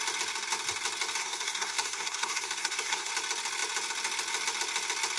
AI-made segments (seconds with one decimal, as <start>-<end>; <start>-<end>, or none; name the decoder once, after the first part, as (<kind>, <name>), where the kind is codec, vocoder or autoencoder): 1.2-3.1 (codec, SNAC)